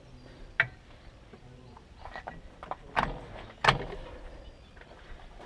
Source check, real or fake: real